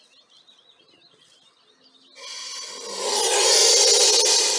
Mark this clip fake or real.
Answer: real